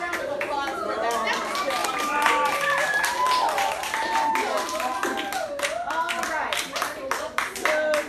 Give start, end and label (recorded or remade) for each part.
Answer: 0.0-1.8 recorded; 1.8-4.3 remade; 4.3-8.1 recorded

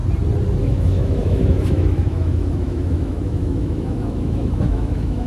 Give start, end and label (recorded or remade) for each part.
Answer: 0.0-0.6 recorded; 0.6-5.3 remade

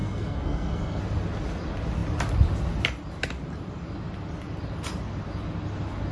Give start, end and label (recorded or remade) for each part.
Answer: 0.0-1.0 remade; 1.0-6.1 recorded

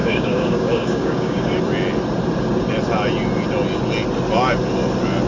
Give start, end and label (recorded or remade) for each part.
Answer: 0.0-1.6 remade; 1.6-5.3 recorded

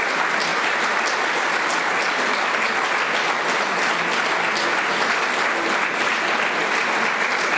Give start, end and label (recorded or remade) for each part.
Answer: 0.0-7.6 recorded

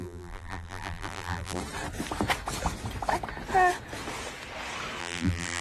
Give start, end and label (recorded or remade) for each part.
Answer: 0.0-1.6 remade; 1.6-5.0 recorded; 5.0-5.6 remade

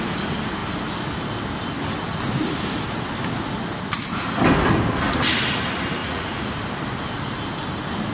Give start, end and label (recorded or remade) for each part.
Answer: 0.0-6.0 recorded; 6.0-6.5 remade; 6.5-8.1 recorded

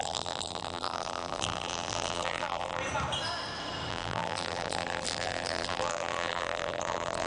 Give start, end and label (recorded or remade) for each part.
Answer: 0.0-2.8 remade; 2.8-3.9 recorded; 3.9-7.3 remade